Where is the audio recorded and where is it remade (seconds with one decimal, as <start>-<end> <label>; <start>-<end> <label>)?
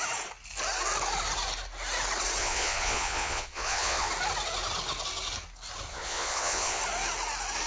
0.0-2.4 recorded; 2.4-4.1 remade; 4.1-5.9 recorded; 5.9-6.8 remade; 6.8-7.7 recorded